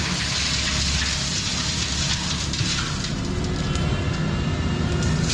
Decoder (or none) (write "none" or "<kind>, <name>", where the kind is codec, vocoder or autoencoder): none